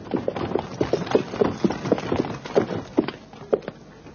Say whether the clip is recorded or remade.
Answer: recorded